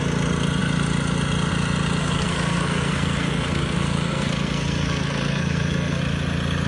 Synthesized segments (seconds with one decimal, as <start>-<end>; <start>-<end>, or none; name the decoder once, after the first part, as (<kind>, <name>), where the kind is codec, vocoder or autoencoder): 2.0-6.0 (codec, SNAC)